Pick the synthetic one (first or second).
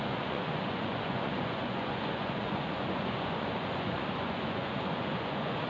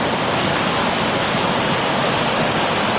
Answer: first